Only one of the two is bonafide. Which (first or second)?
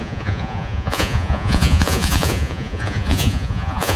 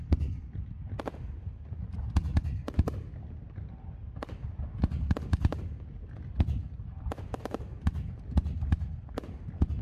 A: second